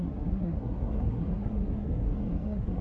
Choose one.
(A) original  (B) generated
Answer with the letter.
B